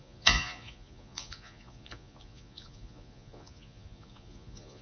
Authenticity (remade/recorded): remade